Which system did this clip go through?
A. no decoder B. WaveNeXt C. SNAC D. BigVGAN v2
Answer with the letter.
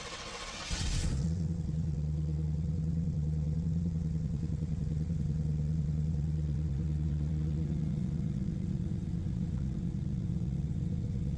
B